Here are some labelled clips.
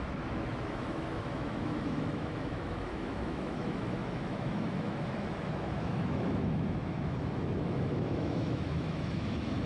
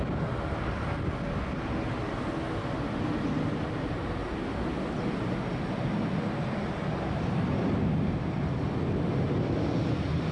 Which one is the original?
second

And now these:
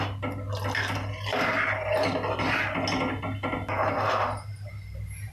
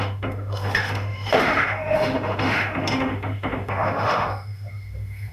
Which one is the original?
first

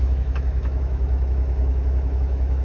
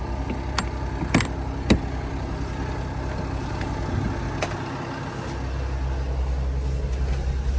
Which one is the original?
second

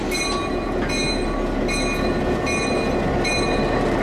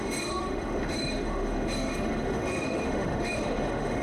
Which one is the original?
first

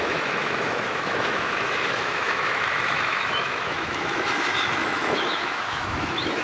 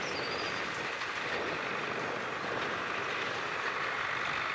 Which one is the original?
second